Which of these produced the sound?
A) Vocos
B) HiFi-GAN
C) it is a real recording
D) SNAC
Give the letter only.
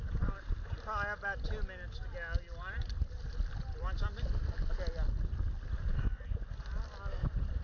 C